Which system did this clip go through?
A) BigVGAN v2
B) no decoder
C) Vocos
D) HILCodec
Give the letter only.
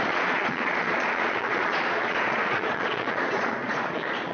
C